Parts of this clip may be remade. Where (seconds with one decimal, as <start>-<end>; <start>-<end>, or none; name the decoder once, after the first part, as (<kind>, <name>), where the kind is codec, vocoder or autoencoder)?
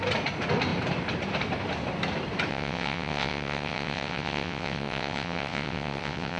2.5-6.4 (vocoder, WaveNeXt)